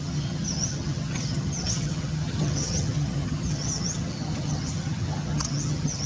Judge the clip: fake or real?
fake